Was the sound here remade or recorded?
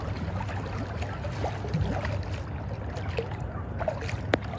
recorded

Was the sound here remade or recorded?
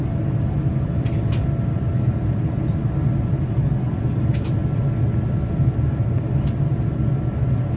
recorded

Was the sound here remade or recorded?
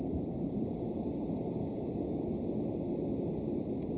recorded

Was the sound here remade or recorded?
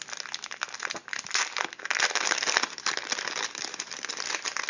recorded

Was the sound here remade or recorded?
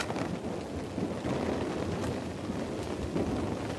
recorded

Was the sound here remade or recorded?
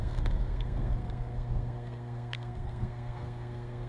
remade